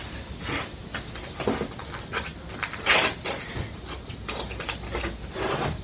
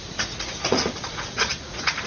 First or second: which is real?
first